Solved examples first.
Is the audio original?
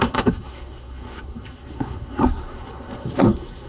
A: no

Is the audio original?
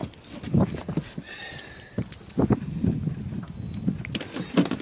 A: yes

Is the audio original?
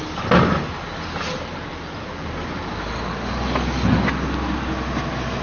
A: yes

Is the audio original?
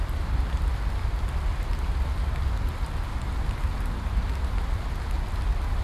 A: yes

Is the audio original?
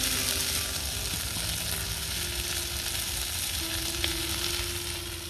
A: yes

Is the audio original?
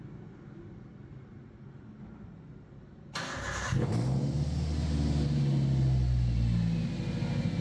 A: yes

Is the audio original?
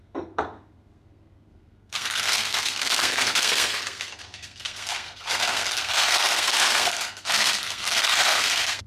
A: no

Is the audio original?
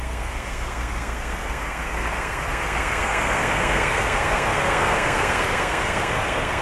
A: no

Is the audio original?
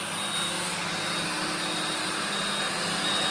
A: yes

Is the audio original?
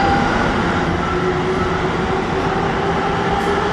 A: yes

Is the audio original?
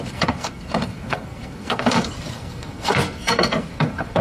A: no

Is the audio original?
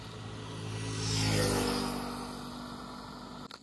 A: yes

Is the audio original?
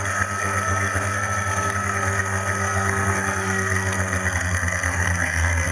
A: no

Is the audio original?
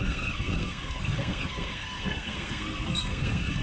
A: no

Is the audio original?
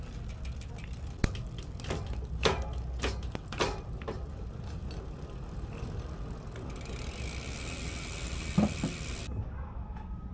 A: yes